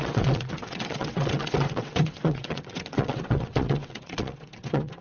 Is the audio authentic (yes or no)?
no